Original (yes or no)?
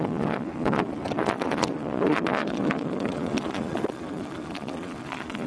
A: no